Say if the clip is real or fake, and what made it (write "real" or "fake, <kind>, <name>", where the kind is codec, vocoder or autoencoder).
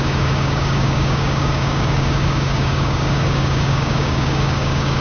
fake, codec, DAC